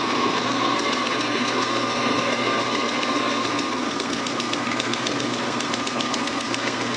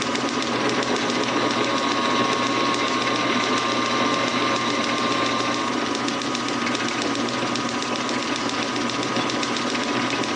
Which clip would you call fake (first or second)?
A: first